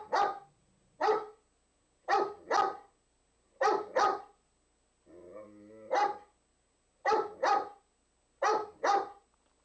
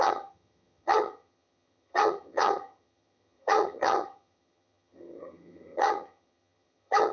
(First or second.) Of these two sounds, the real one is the first